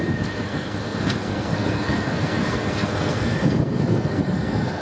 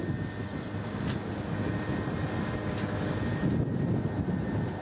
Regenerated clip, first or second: first